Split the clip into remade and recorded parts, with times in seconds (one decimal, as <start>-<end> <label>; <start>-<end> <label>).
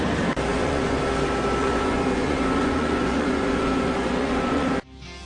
0.0-0.5 recorded; 0.5-1.0 remade; 1.0-1.6 recorded; 1.6-4.7 remade; 4.7-5.3 recorded